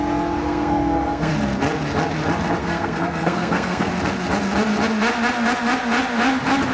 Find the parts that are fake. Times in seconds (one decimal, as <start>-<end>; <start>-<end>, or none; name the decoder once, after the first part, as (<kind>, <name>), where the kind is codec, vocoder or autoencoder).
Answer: 0.4-1.3 (codec, SNAC); 2.6-3.9